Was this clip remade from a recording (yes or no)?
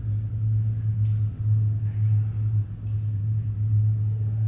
no